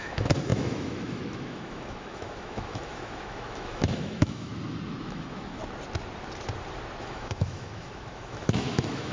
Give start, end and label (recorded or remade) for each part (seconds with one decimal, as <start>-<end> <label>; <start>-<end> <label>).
0.0-4.5 remade; 4.5-5.0 recorded; 5.0-5.6 remade; 5.6-7.0 recorded; 7.0-9.1 remade

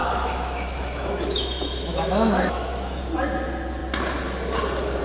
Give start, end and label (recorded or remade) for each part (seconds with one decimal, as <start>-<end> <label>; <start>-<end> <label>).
0.0-3.0 remade; 3.0-5.0 recorded

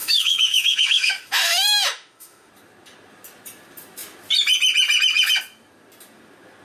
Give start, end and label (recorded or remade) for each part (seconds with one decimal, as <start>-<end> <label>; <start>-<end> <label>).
0.0-2.5 remade; 2.5-6.6 recorded